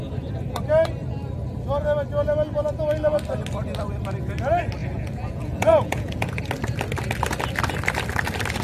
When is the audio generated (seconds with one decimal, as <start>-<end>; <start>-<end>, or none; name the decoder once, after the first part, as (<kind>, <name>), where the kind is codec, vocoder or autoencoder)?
4.8-6.4 (vocoder, Vocos)